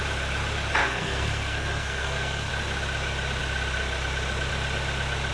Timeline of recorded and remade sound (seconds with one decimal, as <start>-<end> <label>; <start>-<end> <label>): 0.0-0.8 recorded; 0.8-2.5 remade; 2.5-5.3 recorded